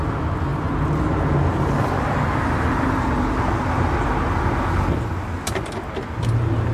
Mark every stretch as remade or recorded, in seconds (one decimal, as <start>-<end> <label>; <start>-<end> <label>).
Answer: 0.0-6.7 recorded